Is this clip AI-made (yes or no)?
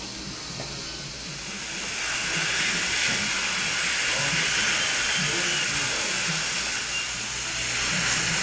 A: no